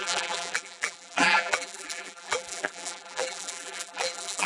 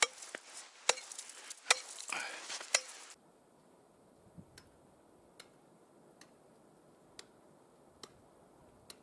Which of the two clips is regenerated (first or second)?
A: first